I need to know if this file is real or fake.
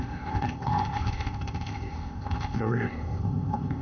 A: fake